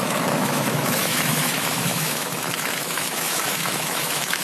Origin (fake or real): fake